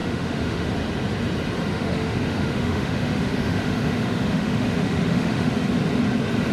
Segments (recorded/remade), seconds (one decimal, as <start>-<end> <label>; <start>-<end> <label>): 0.0-0.7 remade; 0.7-1.7 recorded; 1.7-5.5 remade; 5.5-6.5 recorded